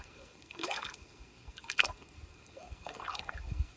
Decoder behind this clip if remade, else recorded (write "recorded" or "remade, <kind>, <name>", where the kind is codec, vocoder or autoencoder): remade, codec, SNAC